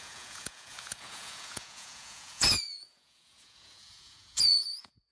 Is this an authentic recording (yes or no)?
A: no